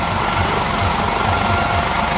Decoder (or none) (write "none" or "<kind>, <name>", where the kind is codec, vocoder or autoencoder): none